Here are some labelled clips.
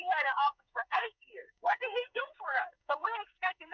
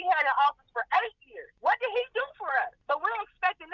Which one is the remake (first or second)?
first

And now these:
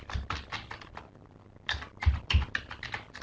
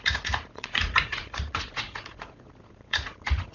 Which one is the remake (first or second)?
second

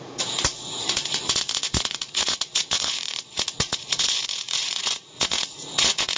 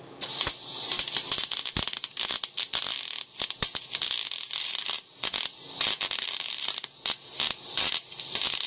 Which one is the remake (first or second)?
first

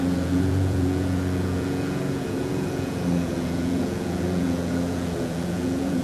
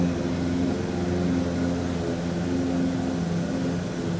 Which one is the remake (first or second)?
first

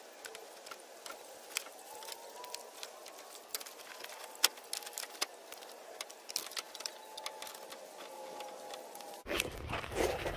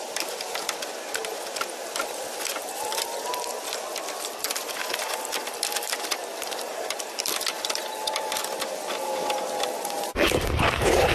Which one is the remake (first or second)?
second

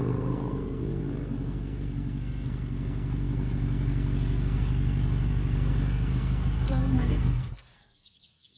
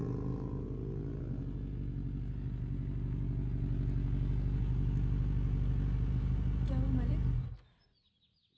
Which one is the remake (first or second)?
first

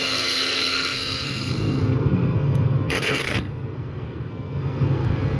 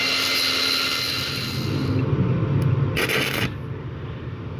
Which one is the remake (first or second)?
first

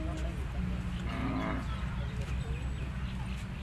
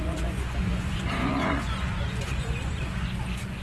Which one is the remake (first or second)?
second